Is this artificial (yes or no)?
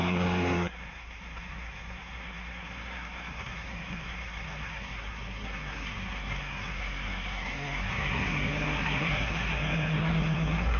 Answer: yes